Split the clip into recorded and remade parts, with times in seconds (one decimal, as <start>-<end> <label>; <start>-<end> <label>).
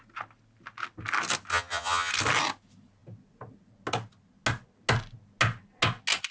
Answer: 0.0-1.5 recorded; 1.5-2.1 remade; 2.1-6.3 recorded